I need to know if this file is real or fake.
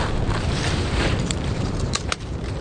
fake